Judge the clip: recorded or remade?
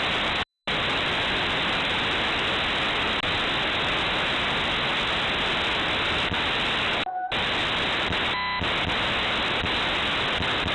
recorded